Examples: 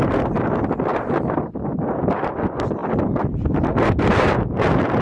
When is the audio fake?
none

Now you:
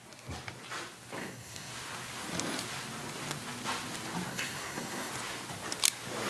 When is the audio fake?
1.2-1.7 (codec, SNAC); 4.3-5.1